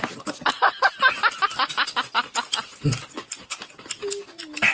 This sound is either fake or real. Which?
real